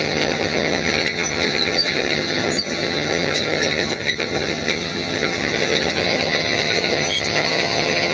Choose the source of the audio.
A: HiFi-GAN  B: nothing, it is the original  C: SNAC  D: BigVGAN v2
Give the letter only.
A